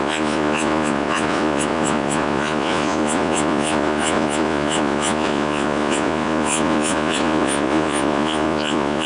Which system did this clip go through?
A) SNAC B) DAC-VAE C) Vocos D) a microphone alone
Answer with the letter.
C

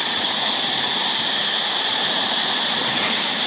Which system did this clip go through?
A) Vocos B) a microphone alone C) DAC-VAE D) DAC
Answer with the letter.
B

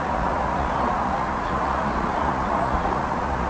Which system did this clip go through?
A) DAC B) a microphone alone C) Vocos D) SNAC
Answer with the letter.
C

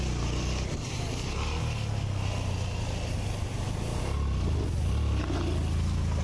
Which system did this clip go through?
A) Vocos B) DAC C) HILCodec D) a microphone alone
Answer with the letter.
D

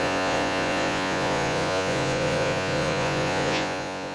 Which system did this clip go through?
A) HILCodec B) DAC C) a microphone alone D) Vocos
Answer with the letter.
D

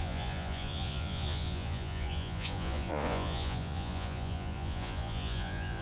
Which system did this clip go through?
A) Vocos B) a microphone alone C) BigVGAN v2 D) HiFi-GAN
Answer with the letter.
A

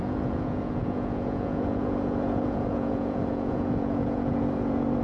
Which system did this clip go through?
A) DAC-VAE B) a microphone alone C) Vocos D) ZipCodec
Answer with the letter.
C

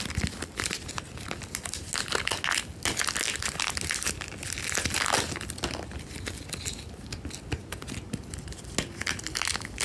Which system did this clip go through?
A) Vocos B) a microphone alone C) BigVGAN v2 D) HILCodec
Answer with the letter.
B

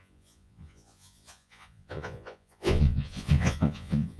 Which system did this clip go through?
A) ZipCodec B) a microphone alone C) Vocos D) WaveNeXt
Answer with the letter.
C